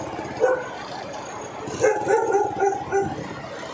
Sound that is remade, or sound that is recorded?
recorded